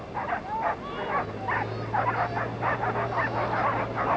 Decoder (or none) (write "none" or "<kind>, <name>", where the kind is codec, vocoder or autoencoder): none